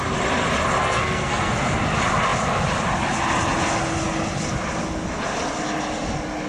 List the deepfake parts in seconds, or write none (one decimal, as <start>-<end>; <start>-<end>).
0.8-1.5